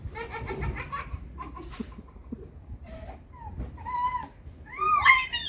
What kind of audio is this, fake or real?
fake